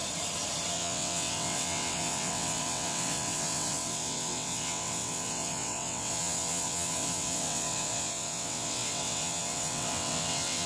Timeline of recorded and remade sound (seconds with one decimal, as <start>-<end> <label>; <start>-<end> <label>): 0.0-0.7 recorded; 0.7-10.7 remade